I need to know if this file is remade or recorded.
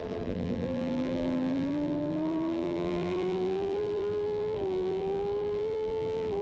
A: remade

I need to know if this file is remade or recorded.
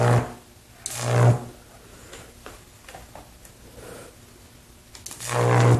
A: recorded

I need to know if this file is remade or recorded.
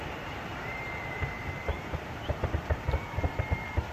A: remade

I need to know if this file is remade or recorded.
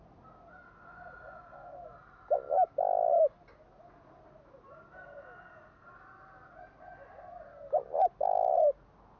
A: recorded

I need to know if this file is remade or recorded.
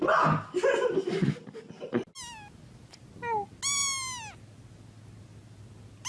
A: recorded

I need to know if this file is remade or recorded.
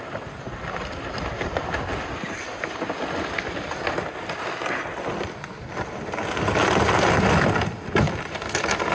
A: recorded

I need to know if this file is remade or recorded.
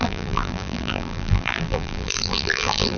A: remade